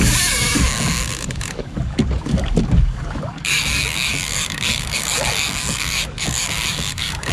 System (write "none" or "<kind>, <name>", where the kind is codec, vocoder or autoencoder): codec, DAC